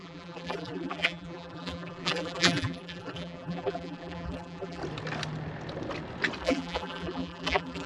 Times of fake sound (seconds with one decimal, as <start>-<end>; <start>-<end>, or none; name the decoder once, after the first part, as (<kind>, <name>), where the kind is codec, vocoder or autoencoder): 0.0-4.8 (vocoder, BigVGAN v2); 6.4-7.9